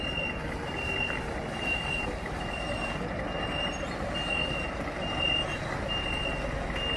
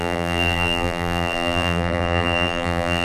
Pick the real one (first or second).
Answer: first